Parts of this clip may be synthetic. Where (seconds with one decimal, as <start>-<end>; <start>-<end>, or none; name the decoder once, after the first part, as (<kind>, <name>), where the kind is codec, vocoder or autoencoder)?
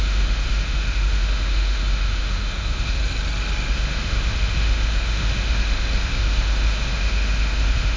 0.0-3.0 (autoencoder, DAC-VAE); 3.7-8.0